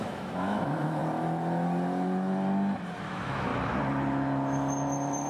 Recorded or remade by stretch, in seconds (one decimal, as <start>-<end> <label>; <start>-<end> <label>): 0.0-1.0 remade; 1.0-3.0 recorded; 3.0-3.5 remade; 3.5-5.3 recorded